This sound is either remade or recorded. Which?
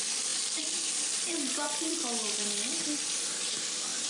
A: recorded